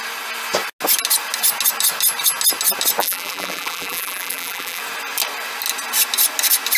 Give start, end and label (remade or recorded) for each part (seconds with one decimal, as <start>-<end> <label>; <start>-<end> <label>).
0.0-3.0 recorded; 3.0-4.8 remade; 4.8-6.8 recorded